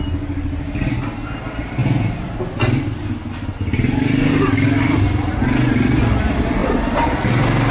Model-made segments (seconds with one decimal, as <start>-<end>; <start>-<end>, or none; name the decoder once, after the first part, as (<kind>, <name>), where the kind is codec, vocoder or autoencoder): 6.6-7.2 (vocoder, BigVGAN v2)